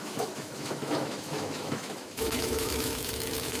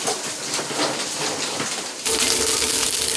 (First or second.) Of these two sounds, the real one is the second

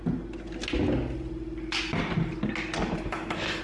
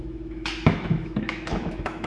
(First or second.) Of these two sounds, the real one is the first